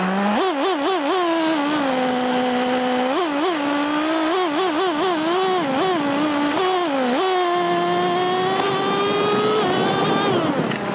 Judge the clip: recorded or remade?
recorded